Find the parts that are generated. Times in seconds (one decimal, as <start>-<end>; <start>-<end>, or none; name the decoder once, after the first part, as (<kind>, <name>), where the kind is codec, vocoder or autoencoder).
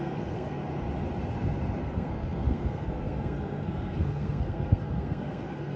0.0-0.6 (codec, SNAC); 1.8-5.8